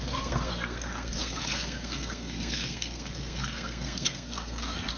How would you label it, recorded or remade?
remade